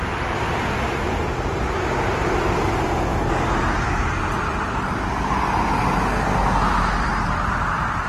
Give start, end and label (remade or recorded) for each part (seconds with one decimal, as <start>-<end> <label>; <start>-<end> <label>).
0.0-8.1 recorded